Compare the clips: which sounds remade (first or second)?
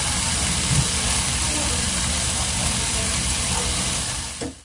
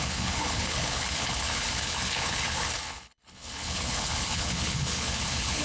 second